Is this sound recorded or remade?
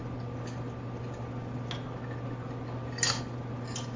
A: recorded